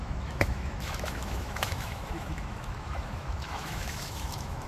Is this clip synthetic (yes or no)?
yes